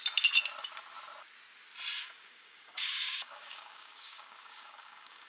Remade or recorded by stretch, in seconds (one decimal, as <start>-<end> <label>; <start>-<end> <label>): 0.0-2.0 recorded; 2.0-5.3 remade

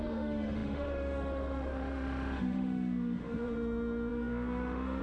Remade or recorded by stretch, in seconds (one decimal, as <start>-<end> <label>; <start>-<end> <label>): 0.0-5.0 remade

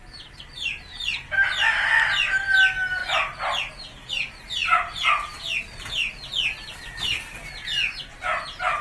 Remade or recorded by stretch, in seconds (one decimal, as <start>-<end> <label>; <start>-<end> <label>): 0.0-8.8 recorded

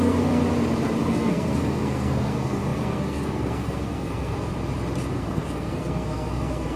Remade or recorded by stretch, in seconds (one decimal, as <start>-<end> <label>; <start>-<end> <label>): 0.0-0.4 remade; 0.4-1.1 recorded; 1.1-4.5 remade; 4.5-5.1 recorded; 5.1-6.8 remade